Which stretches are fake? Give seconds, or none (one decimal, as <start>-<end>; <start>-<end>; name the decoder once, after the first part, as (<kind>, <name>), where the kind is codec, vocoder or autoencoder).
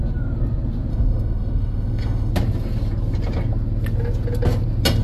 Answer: 0.9-2.3 (autoencoder, DAC-VAE)